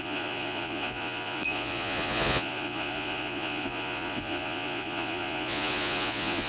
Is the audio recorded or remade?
remade